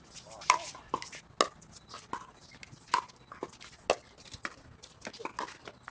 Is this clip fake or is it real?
real